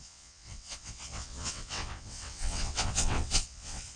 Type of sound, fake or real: fake